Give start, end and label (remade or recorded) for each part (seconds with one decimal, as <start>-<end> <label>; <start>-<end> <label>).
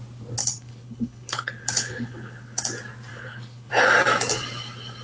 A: 0.0-0.4 recorded; 0.4-2.6 remade; 2.6-3.1 recorded; 3.1-3.7 remade; 3.7-5.0 recorded